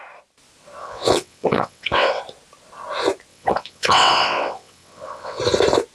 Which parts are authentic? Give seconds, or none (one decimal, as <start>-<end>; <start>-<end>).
0.0-0.8; 2.2-3.3; 5.4-5.9